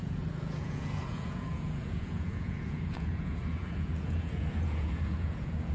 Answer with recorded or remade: remade